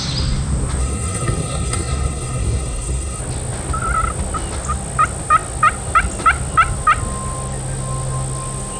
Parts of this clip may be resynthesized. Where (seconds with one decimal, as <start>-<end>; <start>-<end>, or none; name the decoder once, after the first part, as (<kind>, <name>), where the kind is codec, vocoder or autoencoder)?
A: 0.8-3.2 (codec, SNAC)